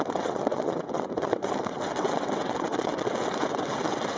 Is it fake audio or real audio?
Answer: fake